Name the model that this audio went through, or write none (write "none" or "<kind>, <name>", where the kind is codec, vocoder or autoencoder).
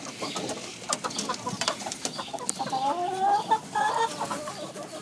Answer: vocoder, BigVGAN v2